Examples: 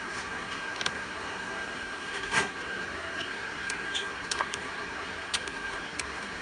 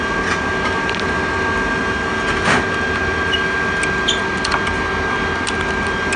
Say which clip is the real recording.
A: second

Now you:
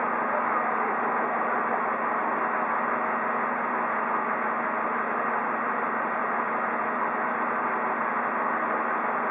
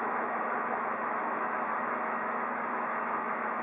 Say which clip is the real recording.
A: first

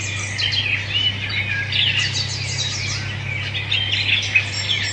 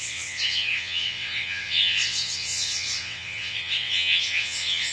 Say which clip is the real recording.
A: first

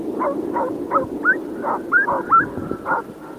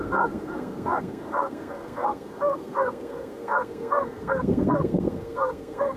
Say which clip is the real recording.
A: first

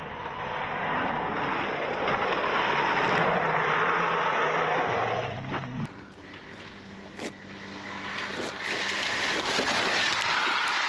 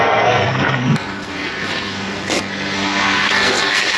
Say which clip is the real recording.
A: first